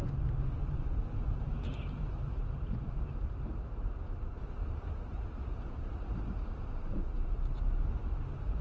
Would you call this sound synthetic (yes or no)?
yes